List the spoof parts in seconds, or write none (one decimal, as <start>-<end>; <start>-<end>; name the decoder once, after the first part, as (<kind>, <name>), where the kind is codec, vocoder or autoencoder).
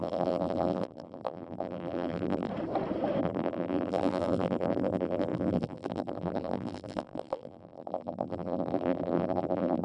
0.0-2.5 (vocoder, BigVGAN v2); 3.2-9.8